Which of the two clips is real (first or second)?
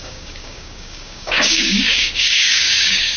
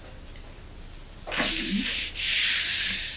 second